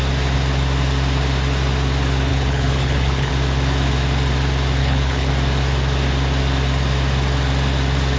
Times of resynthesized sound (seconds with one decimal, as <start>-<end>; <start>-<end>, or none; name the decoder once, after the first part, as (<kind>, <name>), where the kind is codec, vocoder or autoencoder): 2.3-3.3 (codec, HILCodec); 4.8-5.3